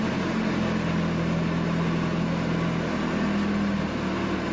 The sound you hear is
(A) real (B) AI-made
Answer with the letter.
A